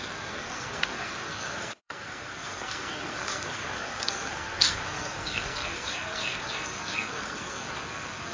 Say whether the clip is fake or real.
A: fake